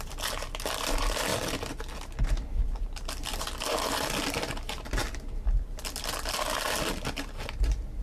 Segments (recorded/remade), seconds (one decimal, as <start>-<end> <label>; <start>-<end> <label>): 0.0-8.0 recorded